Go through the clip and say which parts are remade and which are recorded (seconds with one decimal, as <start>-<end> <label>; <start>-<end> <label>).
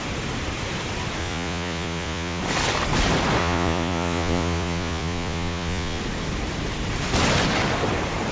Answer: 0.0-1.2 recorded; 1.2-2.4 remade; 2.4-3.4 recorded; 3.4-6.0 remade; 6.0-8.3 recorded